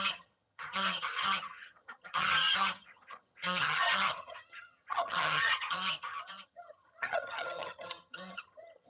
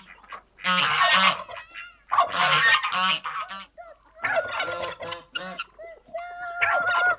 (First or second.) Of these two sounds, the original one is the second